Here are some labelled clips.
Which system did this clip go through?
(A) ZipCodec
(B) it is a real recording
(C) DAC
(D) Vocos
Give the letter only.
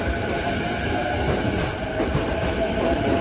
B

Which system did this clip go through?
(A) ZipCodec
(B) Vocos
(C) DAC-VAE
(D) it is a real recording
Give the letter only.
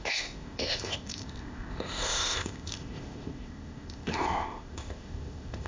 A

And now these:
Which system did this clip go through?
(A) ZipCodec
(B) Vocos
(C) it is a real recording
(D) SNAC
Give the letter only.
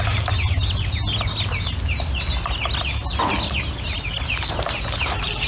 C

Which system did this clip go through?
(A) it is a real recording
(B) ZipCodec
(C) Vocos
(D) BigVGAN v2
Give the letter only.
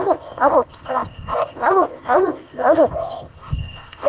B